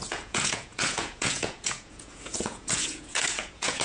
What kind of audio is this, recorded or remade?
remade